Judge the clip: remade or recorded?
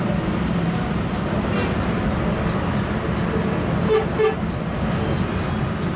recorded